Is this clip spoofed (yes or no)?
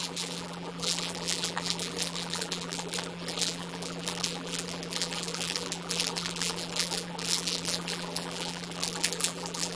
yes